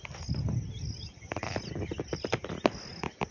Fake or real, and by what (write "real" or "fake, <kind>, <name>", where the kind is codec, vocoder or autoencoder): real